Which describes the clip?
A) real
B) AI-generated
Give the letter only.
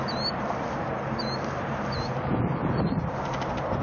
B